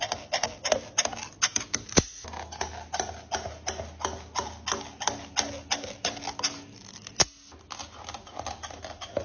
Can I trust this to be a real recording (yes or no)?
yes